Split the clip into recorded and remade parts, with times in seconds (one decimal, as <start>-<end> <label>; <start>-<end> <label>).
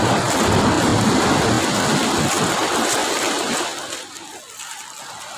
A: 0.0-5.4 recorded